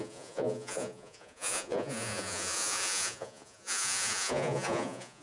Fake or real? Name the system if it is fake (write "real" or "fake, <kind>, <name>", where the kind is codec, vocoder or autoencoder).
fake, vocoder, Vocos